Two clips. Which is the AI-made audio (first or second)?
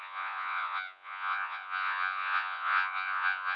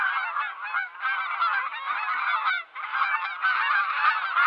first